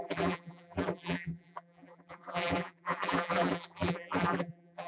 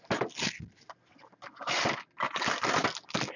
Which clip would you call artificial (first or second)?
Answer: first